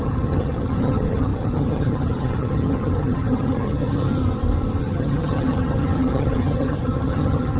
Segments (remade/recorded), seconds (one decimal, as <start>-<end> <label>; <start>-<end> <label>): 0.0-4.2 remade; 4.2-4.8 recorded; 4.8-7.6 remade